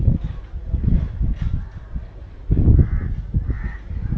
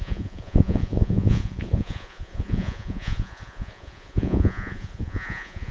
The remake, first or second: second